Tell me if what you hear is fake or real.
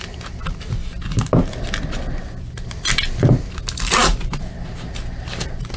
real